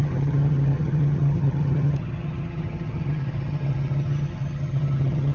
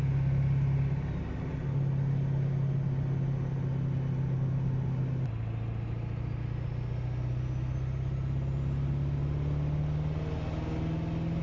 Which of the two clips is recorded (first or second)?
second